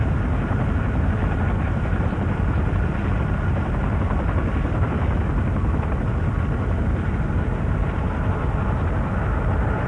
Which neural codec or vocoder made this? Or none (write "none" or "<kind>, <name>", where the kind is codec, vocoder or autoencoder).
none